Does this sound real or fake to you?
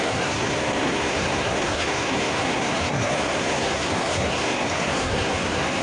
fake